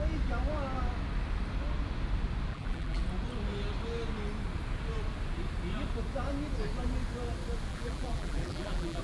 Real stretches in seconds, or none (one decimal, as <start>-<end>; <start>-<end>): 0.0-2.5; 3.0-7.7